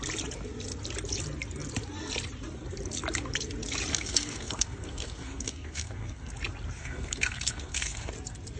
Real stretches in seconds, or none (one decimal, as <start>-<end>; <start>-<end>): 0.0-3.9; 6.3-6.8; 8.1-8.6